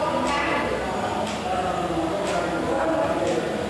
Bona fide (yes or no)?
yes